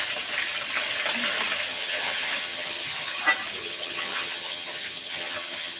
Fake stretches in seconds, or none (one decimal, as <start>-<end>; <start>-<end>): 1.7-3.2; 3.6-5.8

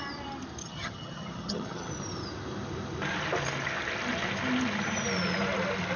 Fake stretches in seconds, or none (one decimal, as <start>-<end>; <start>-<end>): 0.6-1.9